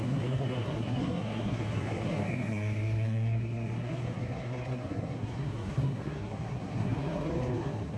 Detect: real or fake fake